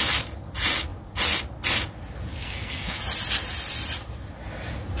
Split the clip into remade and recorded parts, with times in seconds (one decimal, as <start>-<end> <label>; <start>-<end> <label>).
0.0-2.3 recorded; 2.3-3.0 remade; 3.0-5.0 recorded